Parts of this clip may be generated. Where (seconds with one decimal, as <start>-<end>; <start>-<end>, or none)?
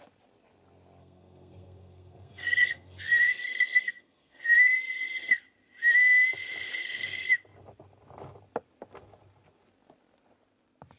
1.0-5.4; 6.8-7.3